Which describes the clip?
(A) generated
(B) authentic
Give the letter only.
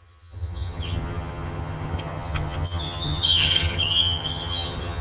A